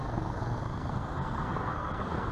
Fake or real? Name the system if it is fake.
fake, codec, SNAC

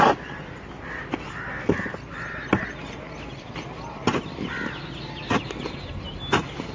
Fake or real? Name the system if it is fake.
real